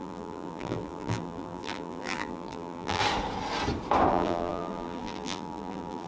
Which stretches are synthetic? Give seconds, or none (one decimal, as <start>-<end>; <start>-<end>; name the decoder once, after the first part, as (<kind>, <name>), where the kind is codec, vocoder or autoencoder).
0.0-3.0 (vocoder, BigVGAN v2); 4.1-6.1